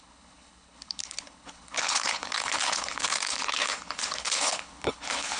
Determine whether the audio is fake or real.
fake